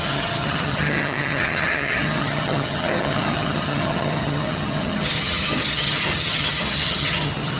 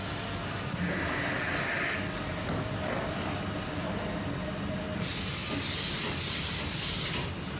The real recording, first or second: second